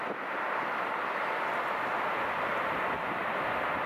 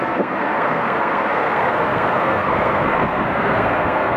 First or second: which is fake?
second